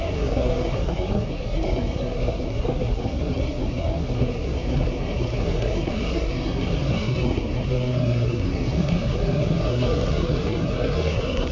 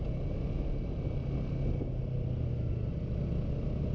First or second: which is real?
second